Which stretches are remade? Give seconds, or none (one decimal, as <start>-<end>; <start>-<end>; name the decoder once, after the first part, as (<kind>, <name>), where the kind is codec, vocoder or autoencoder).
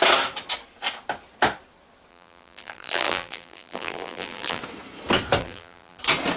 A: 2.1-4.6 (vocoder, BigVGAN v2); 5.4-6.0